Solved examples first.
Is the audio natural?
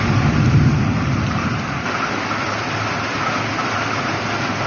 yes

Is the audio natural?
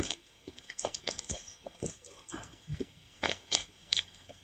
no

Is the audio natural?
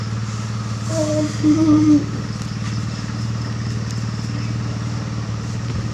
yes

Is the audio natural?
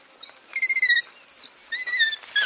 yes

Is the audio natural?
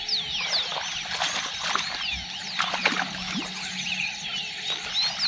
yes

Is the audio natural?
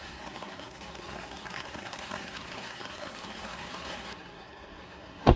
no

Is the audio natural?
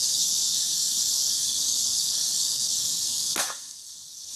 no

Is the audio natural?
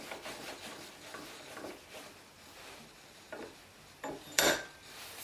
yes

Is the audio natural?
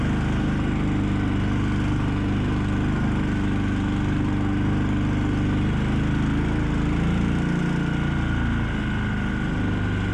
yes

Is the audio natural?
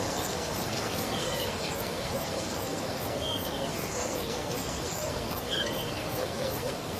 no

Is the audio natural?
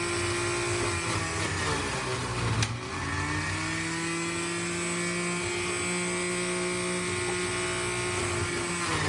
yes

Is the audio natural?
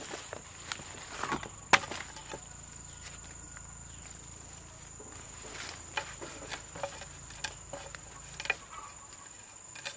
yes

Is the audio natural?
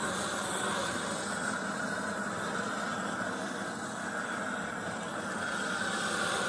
yes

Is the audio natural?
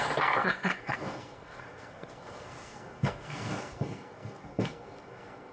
no